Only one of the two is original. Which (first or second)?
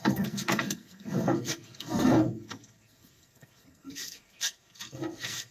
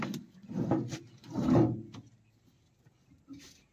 second